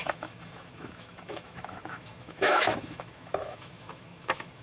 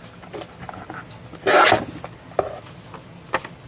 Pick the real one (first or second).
second